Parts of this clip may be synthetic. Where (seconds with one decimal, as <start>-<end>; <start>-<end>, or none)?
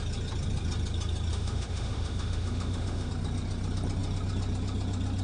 1.3-3.1